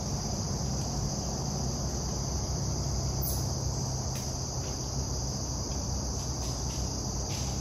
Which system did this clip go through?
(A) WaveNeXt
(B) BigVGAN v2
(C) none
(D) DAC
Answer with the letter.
C